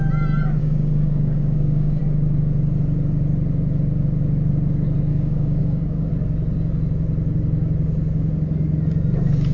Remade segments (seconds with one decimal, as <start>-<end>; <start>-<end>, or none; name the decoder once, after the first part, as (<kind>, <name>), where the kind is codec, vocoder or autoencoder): 0.6-2.0 (codec, DAC); 5.1-6.1